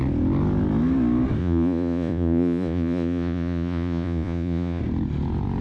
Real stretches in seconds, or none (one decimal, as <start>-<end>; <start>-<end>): 0.0-1.4; 4.8-5.6